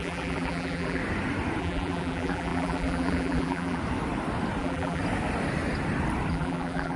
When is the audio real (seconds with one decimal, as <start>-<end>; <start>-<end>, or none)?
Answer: 1.0-1.6; 3.8-4.6; 5.0-6.3